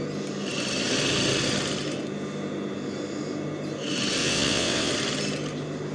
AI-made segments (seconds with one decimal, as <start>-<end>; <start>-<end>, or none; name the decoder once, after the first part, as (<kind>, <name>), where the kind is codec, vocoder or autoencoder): 4.2-4.9 (vocoder, WaveNeXt)

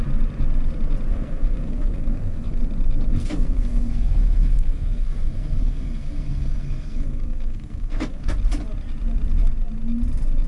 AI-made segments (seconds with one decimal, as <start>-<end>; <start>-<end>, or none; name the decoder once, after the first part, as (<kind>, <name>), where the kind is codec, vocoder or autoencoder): 1.1-2.6 (codec, SNAC); 3.1-8.3

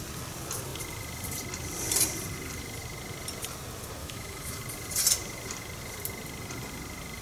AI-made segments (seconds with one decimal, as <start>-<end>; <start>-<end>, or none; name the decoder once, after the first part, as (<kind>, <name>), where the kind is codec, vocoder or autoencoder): 4.0-4.6 (autoencoder, DAC-VAE)

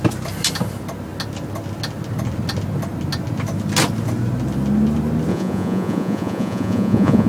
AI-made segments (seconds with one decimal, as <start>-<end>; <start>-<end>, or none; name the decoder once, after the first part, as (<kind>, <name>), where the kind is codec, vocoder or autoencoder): 5.3-7.3 (vocoder, Vocos)

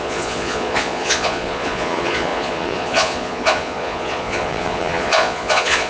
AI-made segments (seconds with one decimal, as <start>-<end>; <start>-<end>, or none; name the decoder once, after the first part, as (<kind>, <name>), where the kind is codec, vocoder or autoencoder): 0.0-5.9 (vocoder, Vocos)

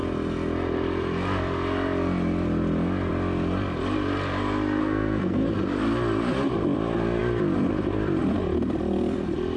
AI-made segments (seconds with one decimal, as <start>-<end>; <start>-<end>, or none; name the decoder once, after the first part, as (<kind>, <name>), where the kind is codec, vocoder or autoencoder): 4.8-5.5 (codec, SNAC)

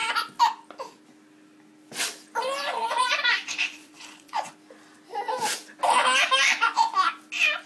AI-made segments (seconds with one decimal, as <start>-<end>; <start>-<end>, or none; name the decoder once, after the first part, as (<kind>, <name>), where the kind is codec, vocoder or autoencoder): 2.8-4.5 (vocoder, Vocos); 6.6-7.1

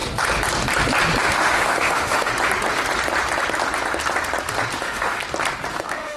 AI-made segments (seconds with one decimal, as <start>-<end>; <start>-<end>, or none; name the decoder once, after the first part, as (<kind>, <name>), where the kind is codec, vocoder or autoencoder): 1.2-2.3 (autoencoder, DAC-VAE); 4.8-5.2; 5.7-6.2